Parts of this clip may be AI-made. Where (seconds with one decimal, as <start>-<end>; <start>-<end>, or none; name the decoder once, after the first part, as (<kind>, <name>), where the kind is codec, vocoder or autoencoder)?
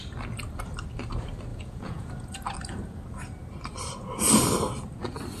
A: 1.5-2.1 (vocoder, Vocos)